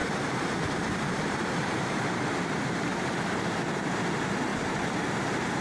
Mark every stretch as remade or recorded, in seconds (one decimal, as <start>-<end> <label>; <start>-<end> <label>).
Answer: 0.0-3.4 remade; 3.4-4.5 recorded; 4.5-5.6 remade